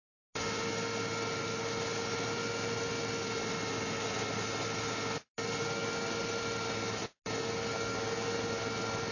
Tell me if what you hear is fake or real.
real